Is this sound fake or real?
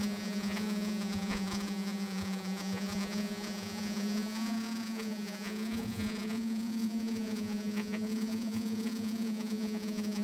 fake